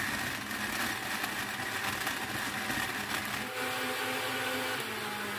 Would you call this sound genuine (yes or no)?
yes